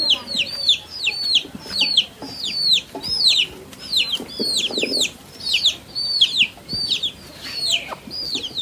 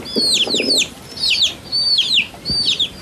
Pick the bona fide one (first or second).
second